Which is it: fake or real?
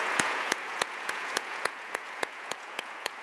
fake